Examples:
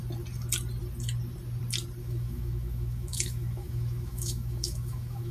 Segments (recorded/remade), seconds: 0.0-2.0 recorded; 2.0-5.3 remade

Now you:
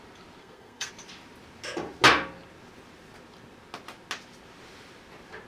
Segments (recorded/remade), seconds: 0.0-0.4 recorded; 0.4-0.9 remade; 0.9-5.5 recorded

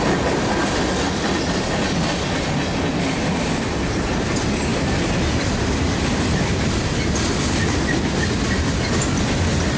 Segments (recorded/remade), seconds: 0.0-9.8 recorded

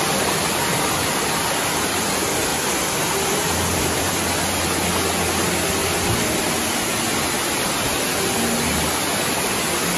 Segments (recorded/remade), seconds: 0.0-2.5 recorded; 2.5-4.5 remade; 4.5-10.0 recorded

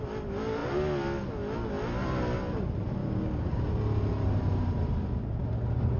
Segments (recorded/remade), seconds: 0.0-3.0 recorded; 3.0-3.6 remade; 3.6-6.0 recorded

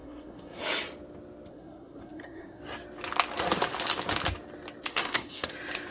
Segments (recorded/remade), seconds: 0.0-0.6 remade; 0.6-1.5 recorded; 1.5-2.6 remade; 2.6-4.9 recorded; 4.9-5.5 remade; 5.5-5.9 recorded

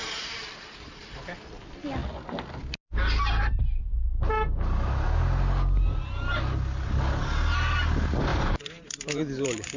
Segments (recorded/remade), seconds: 0.0-1.5 remade; 1.5-8.3 recorded; 8.3-9.8 remade

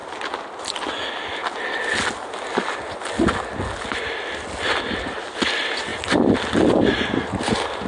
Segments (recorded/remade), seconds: 0.0-5.9 recorded; 5.9-6.6 remade; 6.6-7.9 recorded